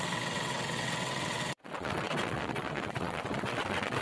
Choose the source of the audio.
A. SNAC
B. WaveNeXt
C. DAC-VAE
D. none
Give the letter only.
B